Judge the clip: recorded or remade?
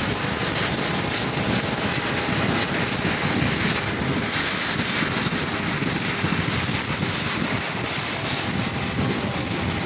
recorded